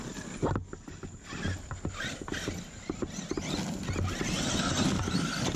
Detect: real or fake real